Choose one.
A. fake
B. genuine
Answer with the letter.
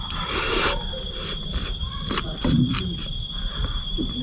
A